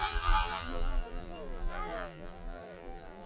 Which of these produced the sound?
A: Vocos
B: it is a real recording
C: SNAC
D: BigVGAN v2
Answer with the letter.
D